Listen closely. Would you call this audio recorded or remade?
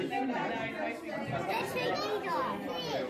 remade